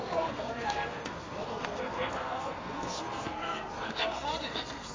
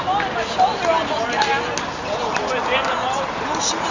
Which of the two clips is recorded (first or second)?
second